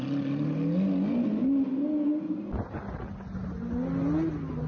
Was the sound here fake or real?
real